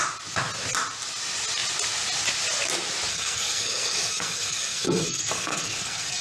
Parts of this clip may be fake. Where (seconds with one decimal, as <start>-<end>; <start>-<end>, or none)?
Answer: 3.1-6.2